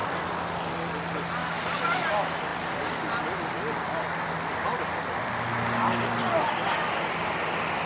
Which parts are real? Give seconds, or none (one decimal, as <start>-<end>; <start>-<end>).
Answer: 0.0-7.9